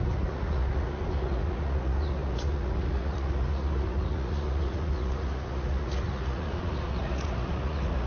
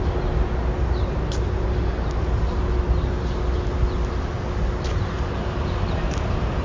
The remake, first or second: first